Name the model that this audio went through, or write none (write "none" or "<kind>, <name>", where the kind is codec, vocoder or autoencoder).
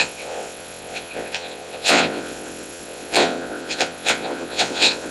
vocoder, WaveNeXt